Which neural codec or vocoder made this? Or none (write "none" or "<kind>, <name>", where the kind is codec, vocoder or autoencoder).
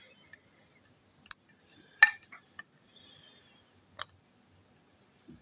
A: none